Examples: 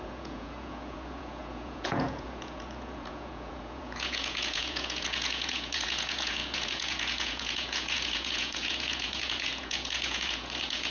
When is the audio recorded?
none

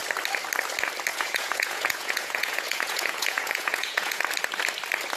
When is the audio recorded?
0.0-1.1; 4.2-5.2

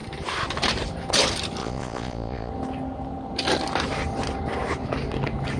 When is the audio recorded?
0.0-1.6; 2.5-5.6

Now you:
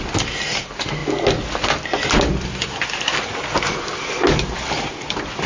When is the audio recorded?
0.0-5.5

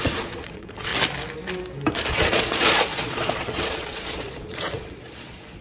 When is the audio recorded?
0.9-2.1

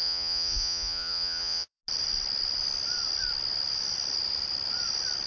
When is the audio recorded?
1.8-5.3

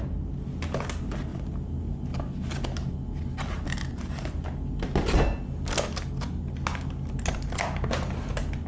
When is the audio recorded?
0.0-8.7

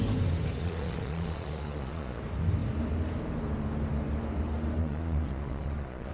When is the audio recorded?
0.0-0.6; 2.2-4.8